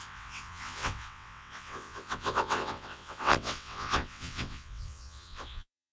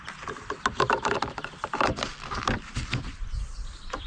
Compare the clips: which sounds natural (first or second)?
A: second